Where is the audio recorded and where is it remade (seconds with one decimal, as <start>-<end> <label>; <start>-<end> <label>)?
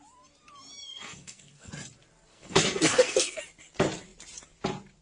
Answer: 0.0-0.8 recorded; 0.8-1.7 remade; 1.7-2.3 recorded; 2.3-3.4 remade; 3.4-5.0 recorded